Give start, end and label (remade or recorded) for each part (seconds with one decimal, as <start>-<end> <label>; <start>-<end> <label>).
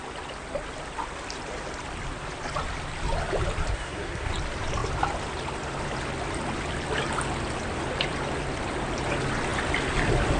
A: 0.0-3.7 recorded; 3.7-4.3 remade; 4.3-10.4 recorded